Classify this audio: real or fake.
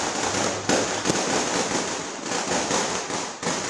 real